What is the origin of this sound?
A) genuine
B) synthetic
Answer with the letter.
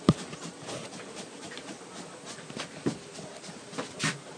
A